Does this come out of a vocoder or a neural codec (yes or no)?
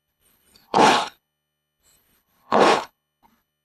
yes